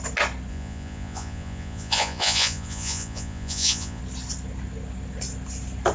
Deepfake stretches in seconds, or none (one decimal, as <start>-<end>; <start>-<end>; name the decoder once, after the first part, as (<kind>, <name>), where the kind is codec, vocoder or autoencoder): 0.5-4.0 (vocoder, Vocos)

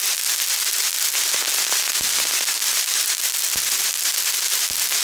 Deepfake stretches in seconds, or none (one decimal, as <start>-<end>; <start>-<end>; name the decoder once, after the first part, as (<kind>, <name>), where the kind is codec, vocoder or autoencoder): none

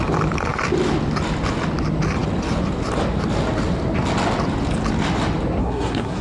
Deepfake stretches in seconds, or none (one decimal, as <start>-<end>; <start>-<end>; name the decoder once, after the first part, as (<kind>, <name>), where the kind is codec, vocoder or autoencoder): 5.6-6.2 (codec, SNAC)

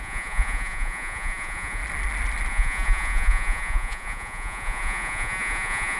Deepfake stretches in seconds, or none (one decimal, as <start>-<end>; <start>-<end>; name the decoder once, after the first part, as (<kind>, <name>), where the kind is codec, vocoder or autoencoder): 0.0-1.8 (vocoder, Vocos); 2.5-6.0

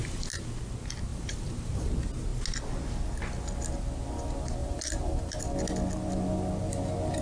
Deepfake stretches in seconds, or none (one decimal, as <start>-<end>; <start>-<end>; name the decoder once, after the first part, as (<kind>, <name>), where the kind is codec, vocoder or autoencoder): 1.1-1.9 (vocoder, BigVGAN v2); 4.6-5.4

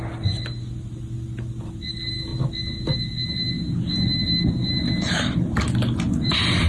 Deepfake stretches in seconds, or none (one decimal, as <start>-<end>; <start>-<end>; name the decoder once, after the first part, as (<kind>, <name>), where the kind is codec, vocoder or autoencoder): none